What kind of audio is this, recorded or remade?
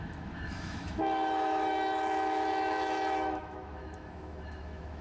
remade